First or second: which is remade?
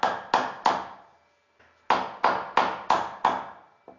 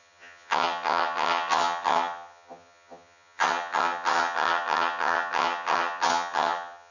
second